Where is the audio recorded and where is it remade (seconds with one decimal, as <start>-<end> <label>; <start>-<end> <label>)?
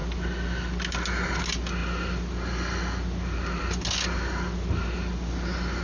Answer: 0.0-5.8 recorded